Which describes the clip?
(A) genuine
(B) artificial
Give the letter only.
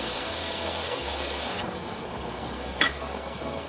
B